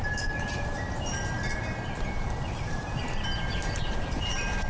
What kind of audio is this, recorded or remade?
remade